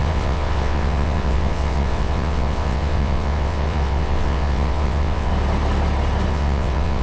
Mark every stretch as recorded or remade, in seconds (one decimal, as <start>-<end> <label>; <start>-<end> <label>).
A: 0.0-5.3 remade; 5.3-6.3 recorded; 6.3-7.0 remade